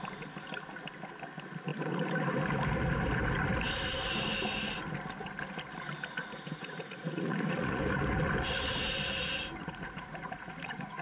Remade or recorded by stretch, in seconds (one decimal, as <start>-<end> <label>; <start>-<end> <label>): 0.0-6.2 recorded; 6.2-7.8 remade; 7.8-9.6 recorded; 9.6-11.0 remade